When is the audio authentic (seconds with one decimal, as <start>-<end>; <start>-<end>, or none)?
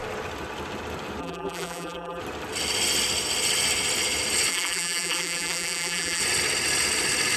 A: 0.0-1.2; 2.2-4.5; 6.2-7.4